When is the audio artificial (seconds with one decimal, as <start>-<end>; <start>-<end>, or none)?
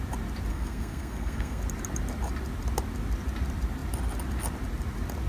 0.5-1.6